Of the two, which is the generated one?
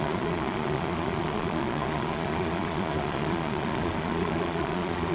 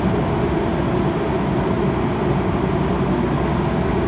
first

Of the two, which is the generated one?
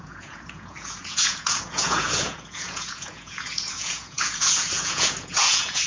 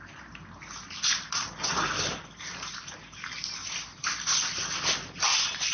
first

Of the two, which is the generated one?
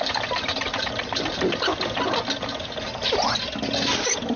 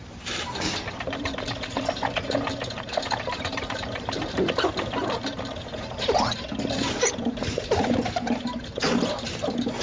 second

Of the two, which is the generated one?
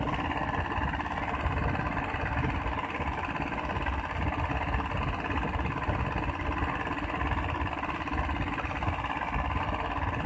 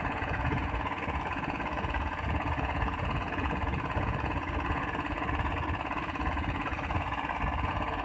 second